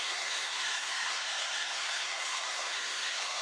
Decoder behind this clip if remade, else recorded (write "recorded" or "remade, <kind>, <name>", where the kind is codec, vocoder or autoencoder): remade, codec, SNAC